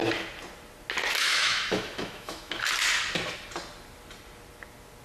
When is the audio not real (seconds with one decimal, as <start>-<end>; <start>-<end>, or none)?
1.2-2.5